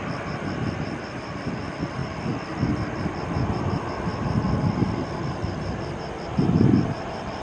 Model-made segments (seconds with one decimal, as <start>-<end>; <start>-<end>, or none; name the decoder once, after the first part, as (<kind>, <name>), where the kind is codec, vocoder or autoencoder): none